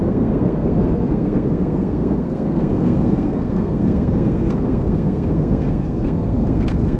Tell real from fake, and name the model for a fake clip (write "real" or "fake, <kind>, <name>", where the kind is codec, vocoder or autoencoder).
fake, codec, SNAC